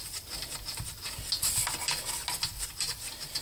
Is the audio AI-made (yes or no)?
no